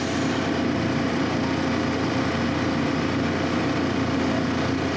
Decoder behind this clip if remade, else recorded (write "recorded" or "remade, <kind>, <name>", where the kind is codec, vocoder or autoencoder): recorded